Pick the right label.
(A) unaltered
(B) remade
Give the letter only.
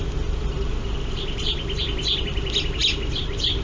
A